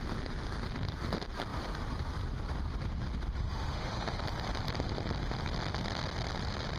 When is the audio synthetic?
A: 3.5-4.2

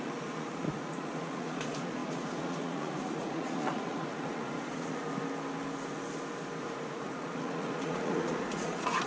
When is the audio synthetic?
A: 0.0-5.0; 6.6-9.1

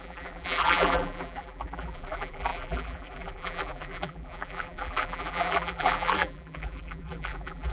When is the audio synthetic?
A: 0.0-7.7

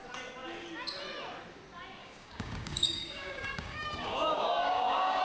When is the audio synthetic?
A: 2.0-5.2

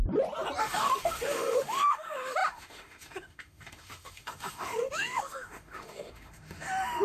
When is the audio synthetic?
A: 0.6-7.0

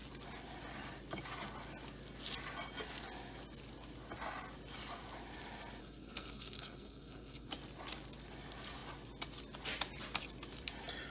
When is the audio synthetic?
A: 5.8-7.5

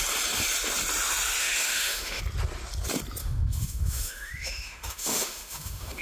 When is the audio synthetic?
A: 1.4-2.2; 3.2-6.0

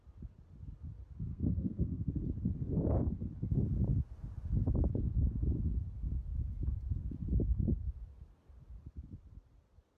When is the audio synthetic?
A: 1.3-2.1